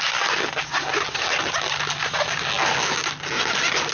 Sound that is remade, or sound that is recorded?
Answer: recorded